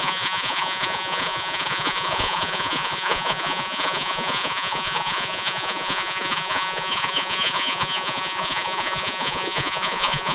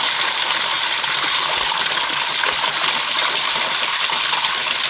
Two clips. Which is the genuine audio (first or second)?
second